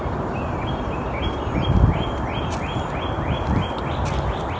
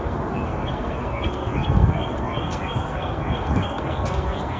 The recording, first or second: first